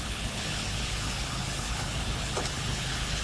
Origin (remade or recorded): remade